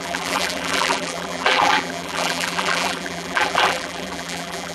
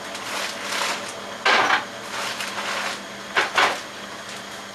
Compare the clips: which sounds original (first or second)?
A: second